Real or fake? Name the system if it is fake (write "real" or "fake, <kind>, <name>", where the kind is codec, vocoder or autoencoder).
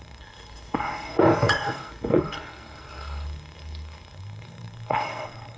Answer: fake, codec, SNAC